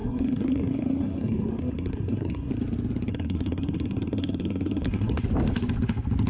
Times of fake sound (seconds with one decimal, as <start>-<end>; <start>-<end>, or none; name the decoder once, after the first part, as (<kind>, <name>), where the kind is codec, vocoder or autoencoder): 0.0-2.5 (codec, SNAC); 3.1-5.2